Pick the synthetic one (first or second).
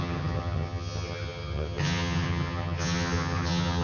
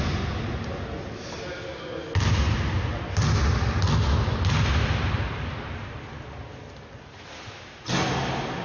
first